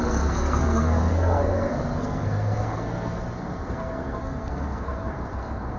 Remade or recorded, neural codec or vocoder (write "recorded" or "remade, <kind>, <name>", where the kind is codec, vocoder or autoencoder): remade, codec, SNAC